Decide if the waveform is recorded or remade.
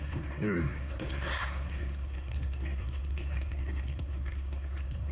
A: remade